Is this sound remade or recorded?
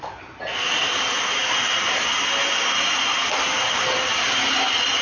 recorded